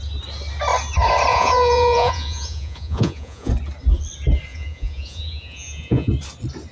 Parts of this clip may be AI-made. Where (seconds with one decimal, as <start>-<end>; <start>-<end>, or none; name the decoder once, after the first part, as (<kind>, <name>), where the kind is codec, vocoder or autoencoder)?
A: 1.3-3.5 (vocoder, Vocos); 4.5-6.1